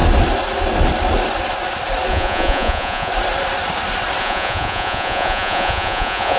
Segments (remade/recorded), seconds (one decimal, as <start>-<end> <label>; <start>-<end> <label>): 0.0-2.1 recorded; 2.1-3.1 remade; 3.1-4.2 recorded; 4.2-6.4 remade